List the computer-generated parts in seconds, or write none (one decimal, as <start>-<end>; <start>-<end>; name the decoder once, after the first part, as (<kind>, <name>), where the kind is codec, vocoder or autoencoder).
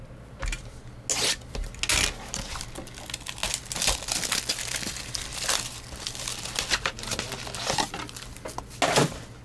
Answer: none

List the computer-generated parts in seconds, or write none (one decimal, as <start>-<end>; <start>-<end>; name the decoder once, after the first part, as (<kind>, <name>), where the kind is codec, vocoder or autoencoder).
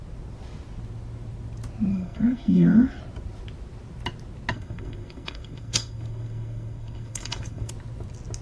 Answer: 1.9-3.0 (codec, SNAC); 4.5-7.7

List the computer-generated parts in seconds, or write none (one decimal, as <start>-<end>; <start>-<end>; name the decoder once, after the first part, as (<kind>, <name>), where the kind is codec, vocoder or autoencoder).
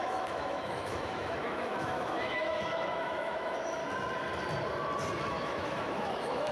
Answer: 0.0-3.8 (autoencoder, DAC-VAE); 5.3-6.5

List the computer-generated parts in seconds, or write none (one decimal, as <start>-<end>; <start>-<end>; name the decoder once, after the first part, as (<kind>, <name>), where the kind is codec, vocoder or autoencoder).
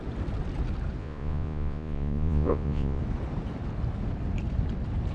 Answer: 1.0-3.0 (vocoder, Vocos)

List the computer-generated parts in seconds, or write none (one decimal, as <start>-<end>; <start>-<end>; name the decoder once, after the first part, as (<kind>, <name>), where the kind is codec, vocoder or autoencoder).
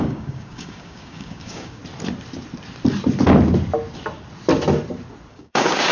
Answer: 0.0-1.8 (codec, DAC); 5.3-5.9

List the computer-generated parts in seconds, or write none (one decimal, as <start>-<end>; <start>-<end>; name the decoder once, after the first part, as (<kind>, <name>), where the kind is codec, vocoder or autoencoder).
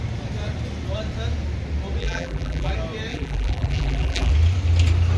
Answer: 2.0-2.7 (vocoder, BigVGAN v2); 3.1-4.3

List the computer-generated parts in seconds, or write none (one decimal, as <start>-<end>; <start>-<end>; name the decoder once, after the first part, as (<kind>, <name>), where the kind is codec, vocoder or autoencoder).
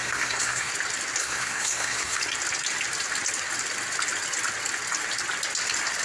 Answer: 0.0-0.7 (codec, SNAC); 1.2-2.2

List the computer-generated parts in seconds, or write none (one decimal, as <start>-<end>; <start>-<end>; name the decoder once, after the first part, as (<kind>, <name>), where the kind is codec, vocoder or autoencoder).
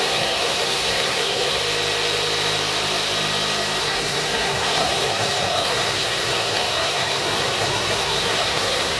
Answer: 0.0-1.6 (codec, SNAC); 3.8-9.0